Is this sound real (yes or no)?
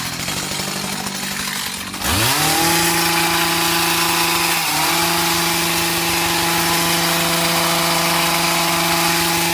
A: yes